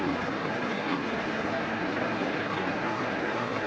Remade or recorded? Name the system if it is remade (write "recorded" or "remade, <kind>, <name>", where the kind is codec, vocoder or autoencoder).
remade, codec, SNAC